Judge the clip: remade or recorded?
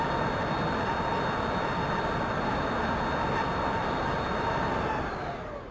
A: recorded